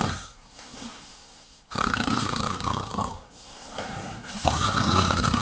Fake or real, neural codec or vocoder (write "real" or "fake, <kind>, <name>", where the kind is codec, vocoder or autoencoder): fake, codec, SNAC